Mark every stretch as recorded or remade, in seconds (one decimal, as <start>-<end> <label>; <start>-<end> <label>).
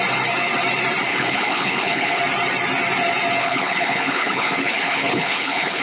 0.0-1.1 recorded; 1.1-2.2 remade; 2.2-3.4 recorded; 3.4-5.8 remade